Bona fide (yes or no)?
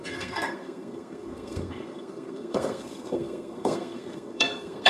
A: no